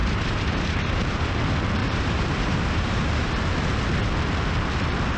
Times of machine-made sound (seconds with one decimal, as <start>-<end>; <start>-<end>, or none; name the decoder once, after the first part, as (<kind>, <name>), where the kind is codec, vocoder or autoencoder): 0.0-1.3 (vocoder, BigVGAN v2); 1.8-3.5